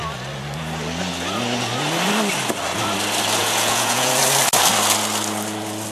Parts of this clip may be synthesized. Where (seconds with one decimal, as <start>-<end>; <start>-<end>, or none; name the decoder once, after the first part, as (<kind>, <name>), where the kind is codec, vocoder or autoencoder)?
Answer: 3.4-4.1 (vocoder, Vocos)